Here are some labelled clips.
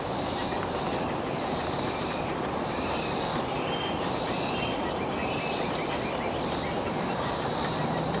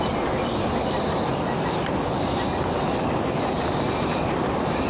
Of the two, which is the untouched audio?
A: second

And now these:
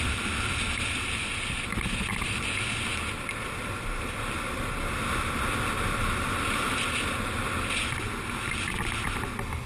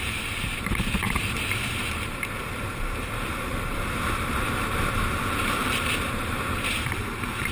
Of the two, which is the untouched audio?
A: first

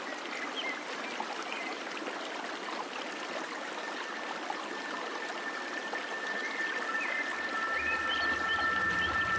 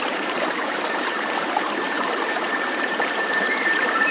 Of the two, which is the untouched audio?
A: first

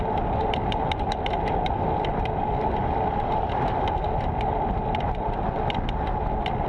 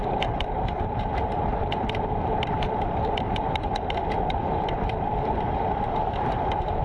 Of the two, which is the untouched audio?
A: first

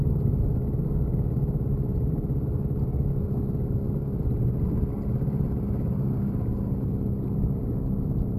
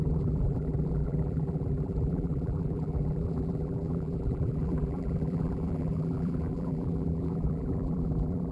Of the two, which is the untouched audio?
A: first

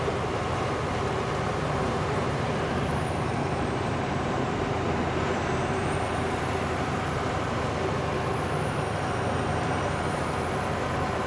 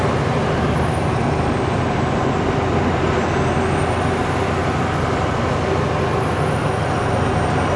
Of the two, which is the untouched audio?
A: second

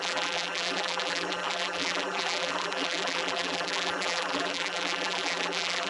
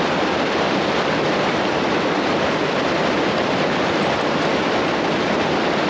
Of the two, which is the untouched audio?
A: second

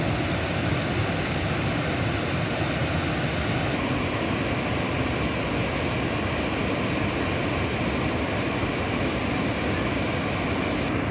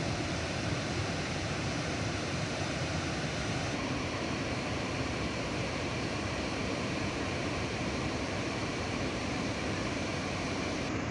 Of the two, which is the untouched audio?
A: first